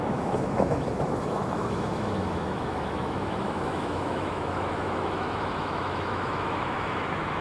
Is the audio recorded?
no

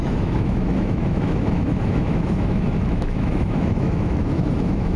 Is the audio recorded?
no